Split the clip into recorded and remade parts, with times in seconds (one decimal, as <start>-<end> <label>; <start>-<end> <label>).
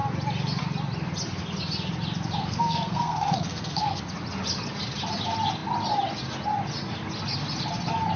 0.0-2.4 recorded; 2.4-4.0 remade; 4.0-8.2 recorded